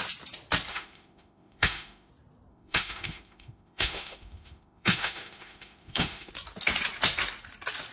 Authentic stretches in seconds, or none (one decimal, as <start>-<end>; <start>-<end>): 0.0-0.7; 2.1-2.5; 6.3-7.9